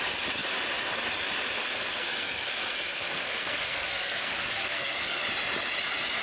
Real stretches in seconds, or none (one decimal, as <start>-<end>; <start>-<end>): 0.0-1.6; 5.2-6.2